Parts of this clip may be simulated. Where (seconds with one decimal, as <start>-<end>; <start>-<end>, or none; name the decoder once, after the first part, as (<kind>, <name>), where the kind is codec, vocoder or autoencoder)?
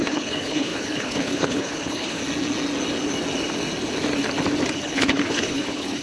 0.0-2.2 (codec, HILCodec); 4.8-6.0